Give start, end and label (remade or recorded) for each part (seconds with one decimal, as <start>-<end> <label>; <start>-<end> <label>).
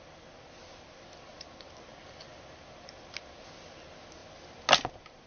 0.0-5.3 recorded